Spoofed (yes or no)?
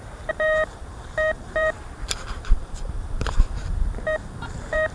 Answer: yes